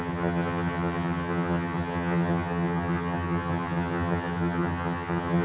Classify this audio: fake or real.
fake